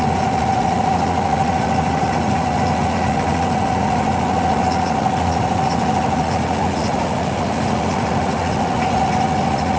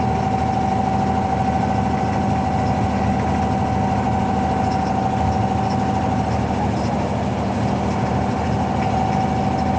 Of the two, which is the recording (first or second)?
second